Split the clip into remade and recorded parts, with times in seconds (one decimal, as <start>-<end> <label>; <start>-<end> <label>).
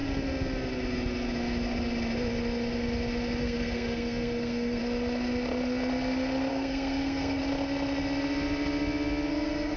0.0-3.4 recorded; 3.4-4.8 remade; 4.8-6.5 recorded; 6.5-7.4 remade; 7.4-9.3 recorded; 9.3-9.8 remade